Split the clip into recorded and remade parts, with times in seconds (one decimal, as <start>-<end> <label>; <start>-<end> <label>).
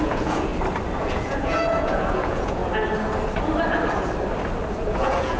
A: 0.0-0.5 remade; 0.5-1.0 recorded; 1.0-2.6 remade; 2.6-4.8 recorded; 4.8-5.4 remade